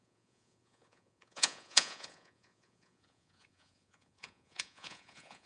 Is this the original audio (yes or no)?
no